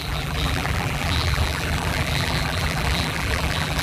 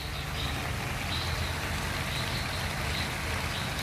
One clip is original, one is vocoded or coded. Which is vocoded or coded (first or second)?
first